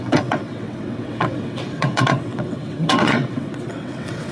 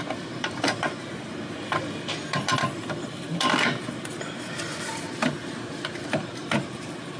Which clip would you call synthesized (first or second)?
first